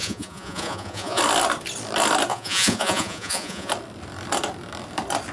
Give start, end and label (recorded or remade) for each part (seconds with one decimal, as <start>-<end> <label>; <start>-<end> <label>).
0.0-1.2 remade; 1.2-2.3 recorded; 2.3-3.7 remade; 3.7-5.3 recorded